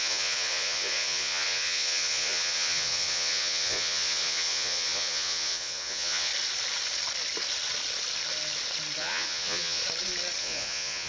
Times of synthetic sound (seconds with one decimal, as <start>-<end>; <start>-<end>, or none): 0.0-6.3; 9.0-9.8; 10.4-11.1